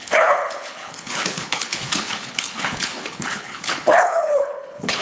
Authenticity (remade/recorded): remade